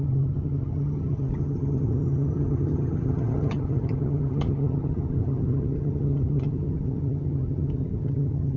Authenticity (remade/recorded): remade